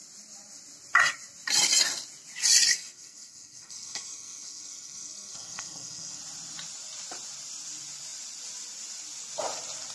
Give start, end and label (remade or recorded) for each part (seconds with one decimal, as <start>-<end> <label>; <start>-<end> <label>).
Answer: 0.0-2.7 recorded; 2.7-6.2 remade; 6.2-9.9 recorded